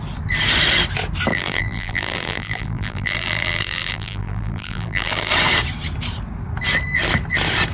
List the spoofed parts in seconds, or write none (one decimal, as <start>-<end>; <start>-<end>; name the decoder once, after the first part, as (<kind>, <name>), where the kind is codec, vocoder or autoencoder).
1.3-5.3 (vocoder, BigVGAN v2)